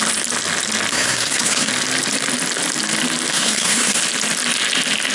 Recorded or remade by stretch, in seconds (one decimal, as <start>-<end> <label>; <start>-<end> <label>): 0.0-0.9 recorded; 0.9-1.7 remade; 1.7-3.3 recorded; 3.3-4.0 remade; 4.0-5.1 recorded